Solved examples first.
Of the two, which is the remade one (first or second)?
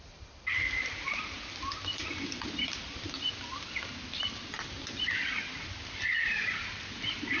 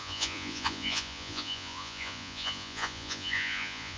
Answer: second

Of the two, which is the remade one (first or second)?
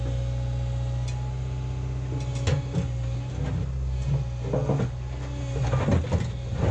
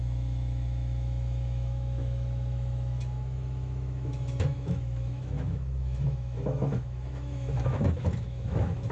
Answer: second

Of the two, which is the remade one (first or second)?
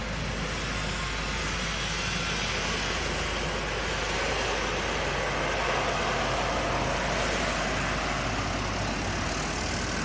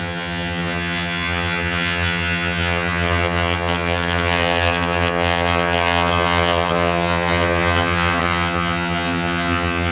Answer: second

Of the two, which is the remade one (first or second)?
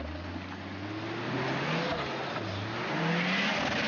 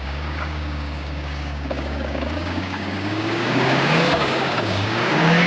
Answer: second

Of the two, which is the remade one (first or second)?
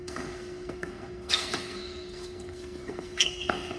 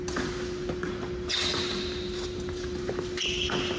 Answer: first